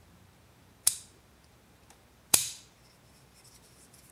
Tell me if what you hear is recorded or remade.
remade